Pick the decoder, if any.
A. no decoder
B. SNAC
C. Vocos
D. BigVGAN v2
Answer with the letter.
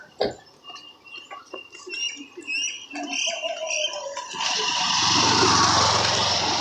A